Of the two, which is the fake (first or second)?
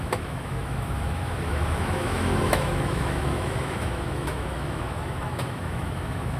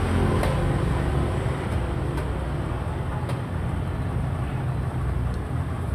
first